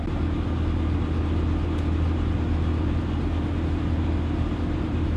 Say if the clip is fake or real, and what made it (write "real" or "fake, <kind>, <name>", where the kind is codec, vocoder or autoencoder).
real